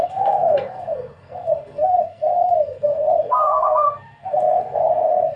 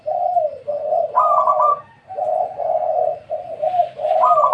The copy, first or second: first